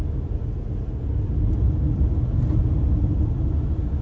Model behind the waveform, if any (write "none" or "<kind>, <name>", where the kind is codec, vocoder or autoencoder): none